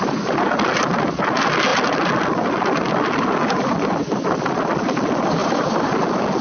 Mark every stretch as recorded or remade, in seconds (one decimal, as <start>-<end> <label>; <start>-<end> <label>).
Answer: 0.0-5.4 recorded; 5.4-5.9 remade; 5.9-6.4 recorded